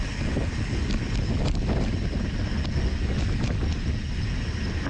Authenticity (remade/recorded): recorded